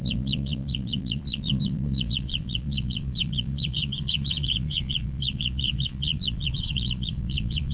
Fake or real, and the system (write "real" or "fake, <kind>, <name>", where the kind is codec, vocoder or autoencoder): fake, vocoder, Vocos